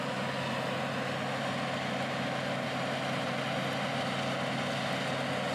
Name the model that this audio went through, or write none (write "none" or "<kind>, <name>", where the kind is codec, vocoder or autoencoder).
none